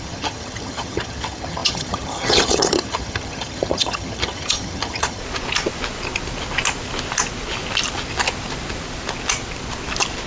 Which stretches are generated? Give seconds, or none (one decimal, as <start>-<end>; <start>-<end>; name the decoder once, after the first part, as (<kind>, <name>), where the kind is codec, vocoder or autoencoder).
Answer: 0.0-5.2 (vocoder, HiFi-GAN)